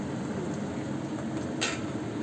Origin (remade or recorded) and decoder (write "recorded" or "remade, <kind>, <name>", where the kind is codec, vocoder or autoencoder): recorded